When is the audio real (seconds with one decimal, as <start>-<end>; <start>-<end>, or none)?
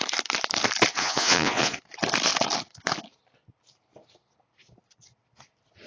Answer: 0.0-0.9; 1.8-5.9